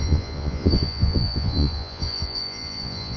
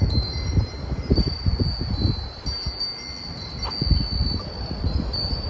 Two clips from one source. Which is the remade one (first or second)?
first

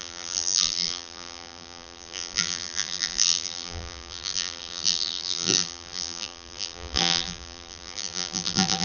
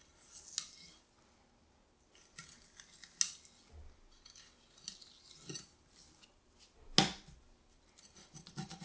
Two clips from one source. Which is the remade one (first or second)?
first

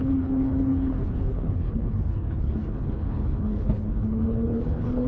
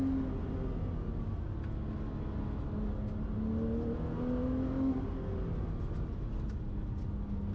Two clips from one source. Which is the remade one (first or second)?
first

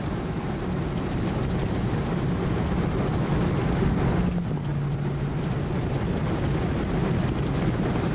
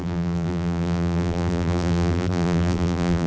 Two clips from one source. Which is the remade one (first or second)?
second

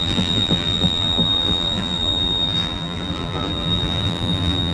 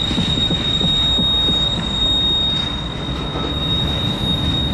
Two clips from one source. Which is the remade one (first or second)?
first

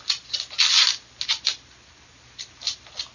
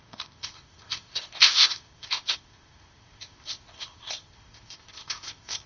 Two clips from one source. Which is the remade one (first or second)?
second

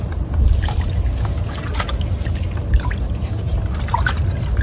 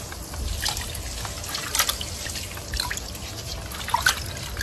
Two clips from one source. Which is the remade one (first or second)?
first